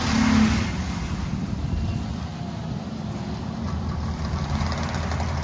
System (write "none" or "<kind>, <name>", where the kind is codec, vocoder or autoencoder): none